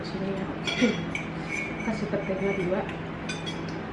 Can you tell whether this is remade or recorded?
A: recorded